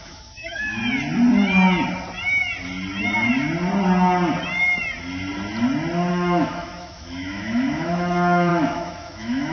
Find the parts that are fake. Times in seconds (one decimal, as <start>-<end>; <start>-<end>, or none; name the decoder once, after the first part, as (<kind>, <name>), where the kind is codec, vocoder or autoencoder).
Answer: 0.0-0.8 (autoencoder, DAC-VAE); 6.1-9.5